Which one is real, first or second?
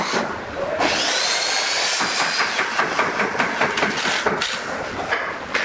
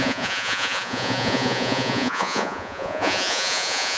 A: first